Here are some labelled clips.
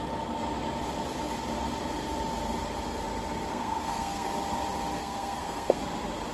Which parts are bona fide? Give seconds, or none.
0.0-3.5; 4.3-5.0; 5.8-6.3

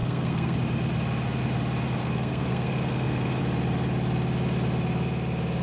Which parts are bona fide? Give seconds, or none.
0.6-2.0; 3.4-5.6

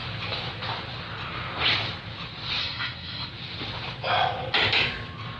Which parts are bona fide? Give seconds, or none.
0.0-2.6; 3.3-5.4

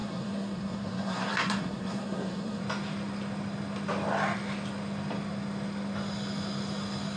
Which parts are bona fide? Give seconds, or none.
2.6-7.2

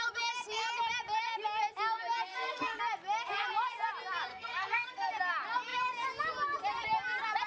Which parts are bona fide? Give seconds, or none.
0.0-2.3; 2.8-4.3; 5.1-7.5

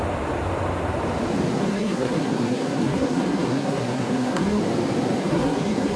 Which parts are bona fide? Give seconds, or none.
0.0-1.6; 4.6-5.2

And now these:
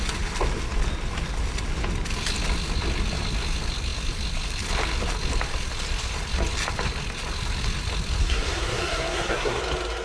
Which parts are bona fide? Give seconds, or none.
0.0-8.2; 9.6-10.0